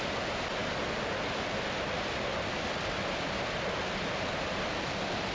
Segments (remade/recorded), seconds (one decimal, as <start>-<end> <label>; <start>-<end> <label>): 0.0-5.3 recorded